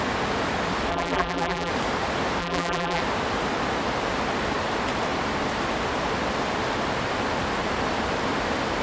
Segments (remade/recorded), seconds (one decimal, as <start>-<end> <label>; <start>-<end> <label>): 0.0-0.9 recorded; 0.9-1.7 remade; 1.7-2.4 recorded; 2.4-3.0 remade; 3.0-8.8 recorded